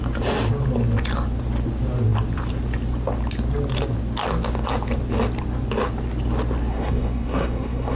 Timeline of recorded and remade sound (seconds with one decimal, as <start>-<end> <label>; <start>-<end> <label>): 0.0-6.7 recorded; 6.7-8.0 remade